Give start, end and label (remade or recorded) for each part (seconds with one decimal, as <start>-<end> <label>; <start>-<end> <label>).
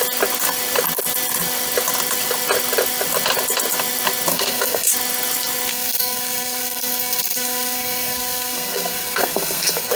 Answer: 0.0-4.3 recorded; 4.3-4.9 remade; 4.9-5.7 recorded; 5.7-10.0 remade